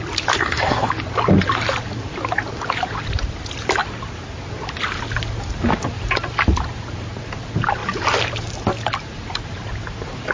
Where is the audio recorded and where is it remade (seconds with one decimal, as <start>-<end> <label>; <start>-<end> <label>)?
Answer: 0.0-0.4 recorded; 0.4-0.9 remade; 0.9-10.3 recorded